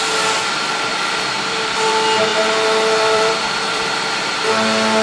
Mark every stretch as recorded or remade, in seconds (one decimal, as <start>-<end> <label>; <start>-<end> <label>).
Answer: 0.0-0.9 recorded; 0.9-1.9 remade; 1.9-2.3 recorded; 2.3-3.9 remade; 3.9-5.0 recorded